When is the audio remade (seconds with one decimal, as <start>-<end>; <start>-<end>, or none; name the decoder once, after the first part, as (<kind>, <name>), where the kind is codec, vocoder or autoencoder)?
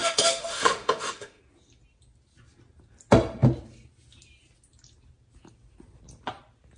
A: 0.0-1.4 (autoencoder, DAC-VAE)